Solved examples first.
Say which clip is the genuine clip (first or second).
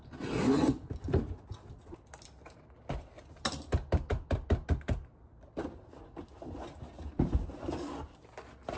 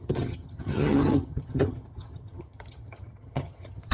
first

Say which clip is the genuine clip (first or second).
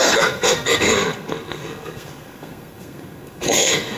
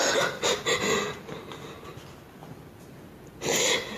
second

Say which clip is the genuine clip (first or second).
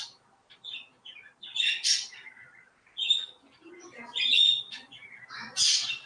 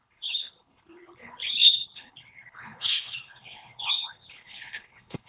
first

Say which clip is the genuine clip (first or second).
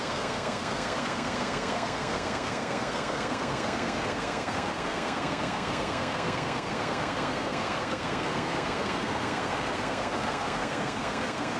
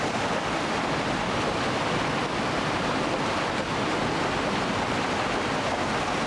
second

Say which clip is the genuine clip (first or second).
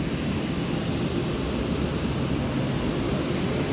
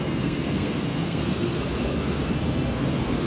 first